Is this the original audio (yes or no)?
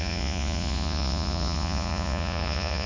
no